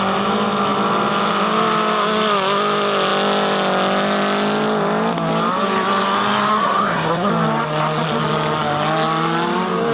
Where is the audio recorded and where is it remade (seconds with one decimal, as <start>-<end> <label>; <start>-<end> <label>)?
0.0-6.5 recorded; 6.5-7.3 remade; 7.3-9.9 recorded